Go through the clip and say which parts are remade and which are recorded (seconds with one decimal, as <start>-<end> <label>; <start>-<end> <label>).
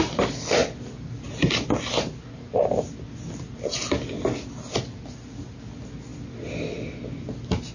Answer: 0.0-7.7 recorded